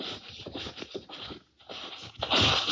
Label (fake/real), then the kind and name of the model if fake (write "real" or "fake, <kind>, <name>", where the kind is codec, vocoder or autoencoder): real